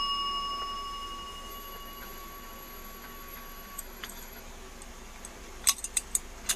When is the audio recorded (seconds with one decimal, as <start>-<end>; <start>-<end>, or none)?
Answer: 0.0-1.5; 4.4-6.6

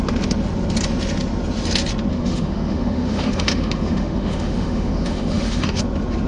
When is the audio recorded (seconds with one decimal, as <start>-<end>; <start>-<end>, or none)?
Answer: 0.0-2.1; 5.8-6.3

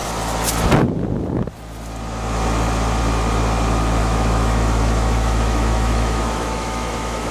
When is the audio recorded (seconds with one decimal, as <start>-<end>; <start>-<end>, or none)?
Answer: 0.0-4.0

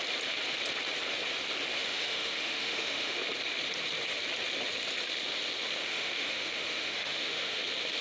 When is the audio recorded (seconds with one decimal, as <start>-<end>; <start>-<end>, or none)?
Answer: 0.0-1.8; 3.2-5.8; 7.6-8.0

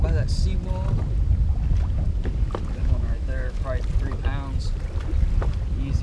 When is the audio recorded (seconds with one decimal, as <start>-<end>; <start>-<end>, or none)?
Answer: 0.0-2.8; 3.6-6.0

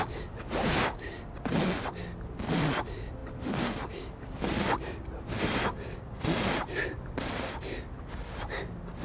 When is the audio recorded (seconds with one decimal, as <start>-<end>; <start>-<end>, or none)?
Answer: 0.0-9.0

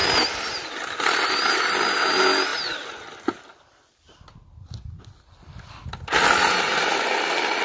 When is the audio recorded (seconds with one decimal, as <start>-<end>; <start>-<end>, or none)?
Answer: 0.0-7.6